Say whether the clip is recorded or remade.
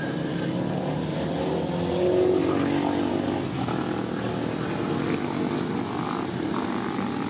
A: recorded